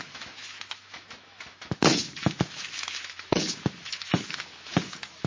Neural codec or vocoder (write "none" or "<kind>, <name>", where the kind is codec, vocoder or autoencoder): autoencoder, DAC-VAE